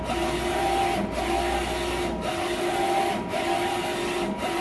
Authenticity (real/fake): real